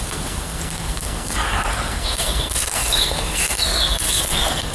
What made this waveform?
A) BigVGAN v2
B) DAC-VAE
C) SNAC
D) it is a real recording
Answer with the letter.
C